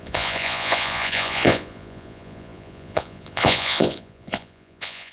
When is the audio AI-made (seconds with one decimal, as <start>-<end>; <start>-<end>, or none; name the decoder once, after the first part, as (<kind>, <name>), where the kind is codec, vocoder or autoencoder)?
0.0-5.1 (vocoder, Vocos)